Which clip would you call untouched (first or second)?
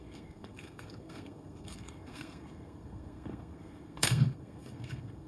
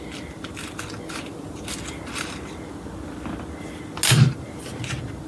second